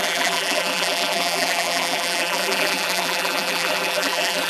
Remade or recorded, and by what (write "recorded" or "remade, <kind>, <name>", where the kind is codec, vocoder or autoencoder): remade, vocoder, BigVGAN v2